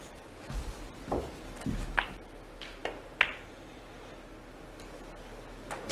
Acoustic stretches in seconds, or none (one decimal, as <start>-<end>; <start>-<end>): 1.3-2.8; 3.8-5.9